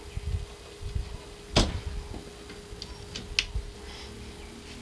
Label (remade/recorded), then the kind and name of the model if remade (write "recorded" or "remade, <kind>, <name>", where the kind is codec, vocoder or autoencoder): recorded